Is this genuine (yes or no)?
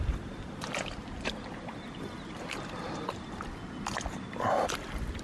yes